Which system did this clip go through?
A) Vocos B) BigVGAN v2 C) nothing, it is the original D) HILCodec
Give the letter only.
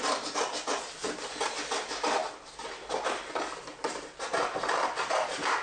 C